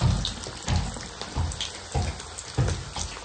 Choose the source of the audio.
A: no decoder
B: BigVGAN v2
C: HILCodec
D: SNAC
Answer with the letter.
A